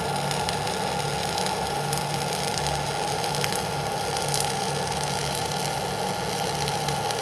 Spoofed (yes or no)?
no